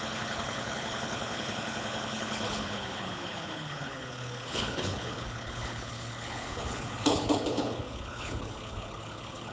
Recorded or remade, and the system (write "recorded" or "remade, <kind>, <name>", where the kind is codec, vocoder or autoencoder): remade, codec, HILCodec